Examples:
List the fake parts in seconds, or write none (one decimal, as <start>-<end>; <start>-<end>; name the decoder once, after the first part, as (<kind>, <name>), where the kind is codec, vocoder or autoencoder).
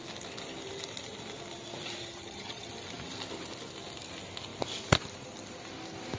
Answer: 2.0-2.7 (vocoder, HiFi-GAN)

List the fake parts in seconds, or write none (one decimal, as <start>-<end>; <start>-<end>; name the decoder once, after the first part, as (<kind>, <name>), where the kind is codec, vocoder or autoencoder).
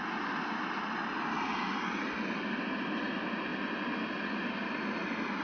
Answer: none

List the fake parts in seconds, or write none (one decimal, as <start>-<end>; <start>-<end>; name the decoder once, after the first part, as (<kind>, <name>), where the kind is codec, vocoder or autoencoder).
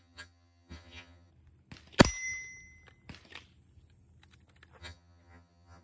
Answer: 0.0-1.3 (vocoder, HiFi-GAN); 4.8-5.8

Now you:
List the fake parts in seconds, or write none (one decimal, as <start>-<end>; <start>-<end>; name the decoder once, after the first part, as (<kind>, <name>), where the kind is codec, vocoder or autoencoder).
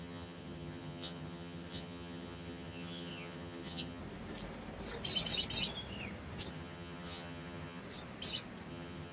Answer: 0.0-4.0 (vocoder, HiFi-GAN); 6.5-7.8; 8.7-9.1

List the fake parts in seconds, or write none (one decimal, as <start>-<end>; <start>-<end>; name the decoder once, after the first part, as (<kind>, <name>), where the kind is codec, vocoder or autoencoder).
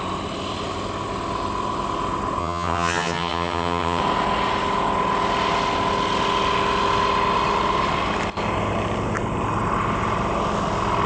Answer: 2.4-4.0 (vocoder, HiFi-GAN)